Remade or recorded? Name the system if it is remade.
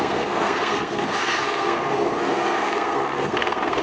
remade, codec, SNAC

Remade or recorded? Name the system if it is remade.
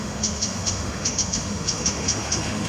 remade, autoencoder, DAC-VAE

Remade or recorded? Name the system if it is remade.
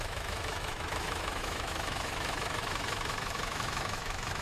remade, autoencoder, DAC-VAE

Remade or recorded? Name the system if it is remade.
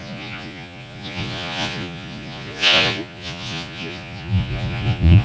remade, vocoder, Vocos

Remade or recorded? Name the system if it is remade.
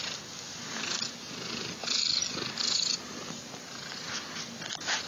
recorded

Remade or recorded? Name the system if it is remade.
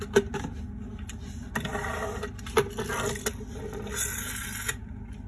recorded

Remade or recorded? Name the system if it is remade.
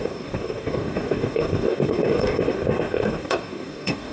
remade, codec, DAC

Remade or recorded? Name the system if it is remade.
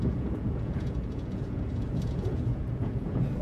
remade, vocoder, Vocos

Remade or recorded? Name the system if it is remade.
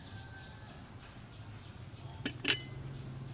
recorded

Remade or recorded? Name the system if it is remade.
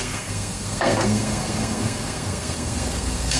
remade, codec, SNAC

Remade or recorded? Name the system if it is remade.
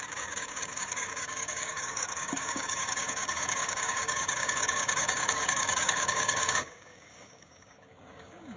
remade, codec, DAC